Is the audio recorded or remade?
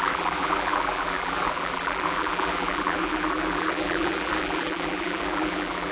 remade